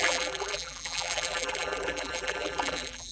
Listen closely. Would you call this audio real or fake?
fake